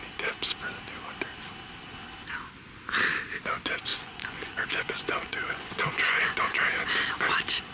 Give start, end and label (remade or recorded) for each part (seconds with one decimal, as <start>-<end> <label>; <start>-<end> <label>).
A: 0.0-3.9 recorded; 3.9-6.3 remade; 6.3-7.7 recorded